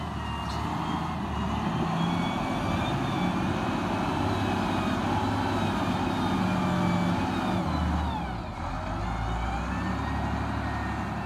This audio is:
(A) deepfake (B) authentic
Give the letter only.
B